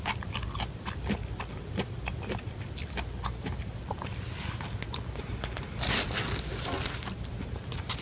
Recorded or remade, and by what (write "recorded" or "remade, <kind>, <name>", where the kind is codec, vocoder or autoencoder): recorded